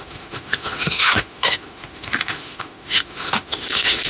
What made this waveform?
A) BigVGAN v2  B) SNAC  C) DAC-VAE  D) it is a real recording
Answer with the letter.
C